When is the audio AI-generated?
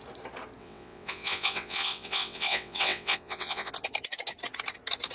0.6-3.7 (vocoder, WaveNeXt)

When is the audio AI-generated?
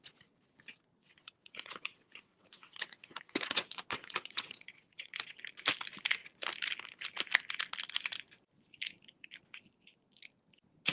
0.9-5.4 (vocoder, WaveNeXt)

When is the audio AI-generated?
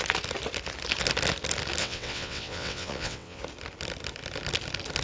1.8-3.4 (vocoder, WaveNeXt)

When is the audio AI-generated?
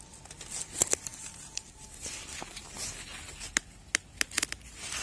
none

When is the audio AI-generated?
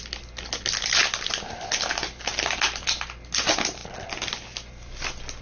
none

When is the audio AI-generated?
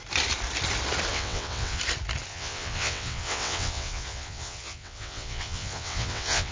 1.1-1.8 (vocoder, WaveNeXt); 2.3-6.5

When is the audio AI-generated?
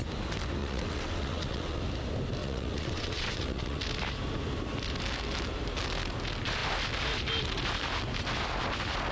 0.6-1.8 (vocoder, WaveNeXt); 2.4-3.8